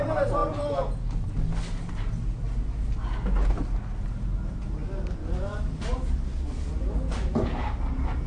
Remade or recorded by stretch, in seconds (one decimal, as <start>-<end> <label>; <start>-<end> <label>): 0.0-8.3 recorded